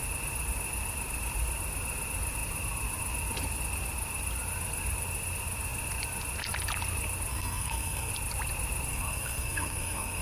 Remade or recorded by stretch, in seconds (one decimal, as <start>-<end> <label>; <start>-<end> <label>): 0.0-7.3 recorded; 7.3-8.1 remade; 8.1-8.9 recorded; 8.9-10.2 remade